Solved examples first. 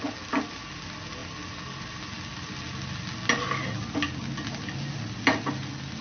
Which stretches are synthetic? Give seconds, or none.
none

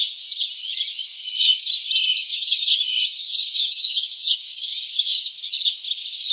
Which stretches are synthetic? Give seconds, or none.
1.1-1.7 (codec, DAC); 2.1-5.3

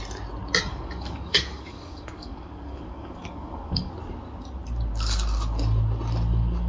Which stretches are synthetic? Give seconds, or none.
0.7-3.9 (codec, DAC)

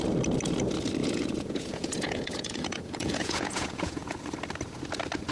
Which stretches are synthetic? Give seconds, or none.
1.0-4.2 (vocoder, Vocos)

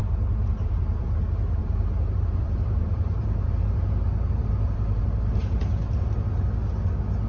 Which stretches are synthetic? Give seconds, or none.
0.0-1.2 (vocoder, BigVGAN v2); 1.6-5.0; 5.4-6.0